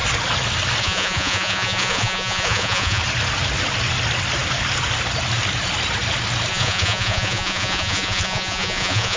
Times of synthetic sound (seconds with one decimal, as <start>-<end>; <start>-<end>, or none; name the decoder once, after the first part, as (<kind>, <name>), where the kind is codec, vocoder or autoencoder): 0.8-3.0 (vocoder, Vocos); 6.5-9.2